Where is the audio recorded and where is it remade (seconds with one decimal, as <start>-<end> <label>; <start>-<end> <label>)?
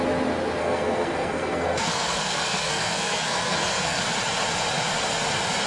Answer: 0.0-0.6 recorded; 0.6-4.0 remade; 4.0-5.7 recorded